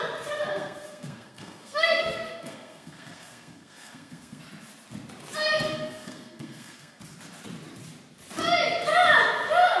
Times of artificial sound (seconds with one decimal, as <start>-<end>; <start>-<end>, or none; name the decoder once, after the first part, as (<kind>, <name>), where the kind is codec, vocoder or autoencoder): 0.5-4.4 (codec, SNAC); 5.7-7.0